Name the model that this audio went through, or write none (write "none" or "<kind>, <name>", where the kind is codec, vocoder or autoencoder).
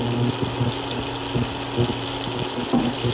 none